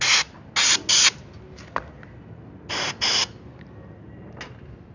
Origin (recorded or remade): recorded